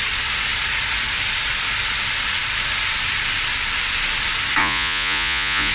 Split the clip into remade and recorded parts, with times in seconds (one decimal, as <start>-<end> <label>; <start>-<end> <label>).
0.0-4.6 recorded; 4.6-5.7 remade

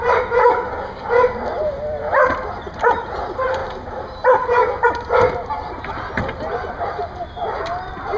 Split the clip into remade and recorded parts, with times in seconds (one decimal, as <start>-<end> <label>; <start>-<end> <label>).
0.0-0.4 recorded; 0.4-1.1 remade; 1.1-8.2 recorded